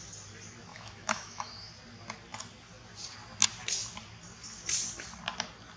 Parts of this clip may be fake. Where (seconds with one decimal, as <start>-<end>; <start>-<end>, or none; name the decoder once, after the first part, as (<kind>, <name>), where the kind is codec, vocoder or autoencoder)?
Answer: 0.7-1.7 (autoencoder, DAC-VAE)